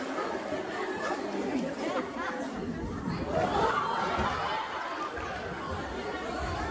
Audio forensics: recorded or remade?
recorded